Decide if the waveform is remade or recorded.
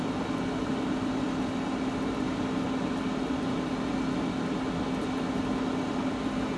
recorded